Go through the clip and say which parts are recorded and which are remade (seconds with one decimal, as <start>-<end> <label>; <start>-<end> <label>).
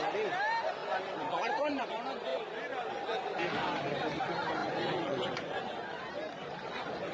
0.0-0.8 recorded; 0.8-1.9 remade; 1.9-4.6 recorded; 4.6-5.7 remade; 5.7-7.1 recorded